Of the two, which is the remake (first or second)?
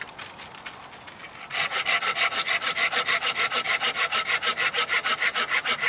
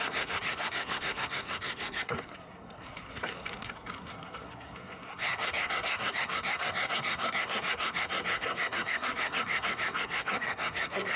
second